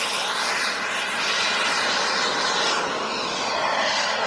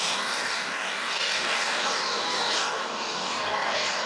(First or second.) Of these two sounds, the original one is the first